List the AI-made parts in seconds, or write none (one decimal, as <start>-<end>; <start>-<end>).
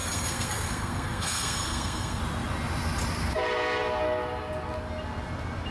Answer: 0.0-2.2